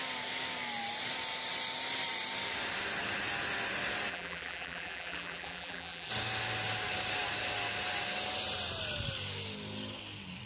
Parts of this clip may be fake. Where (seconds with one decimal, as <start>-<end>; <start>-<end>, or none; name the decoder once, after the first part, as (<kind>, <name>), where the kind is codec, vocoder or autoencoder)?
4.1-6.1 (vocoder, BigVGAN v2)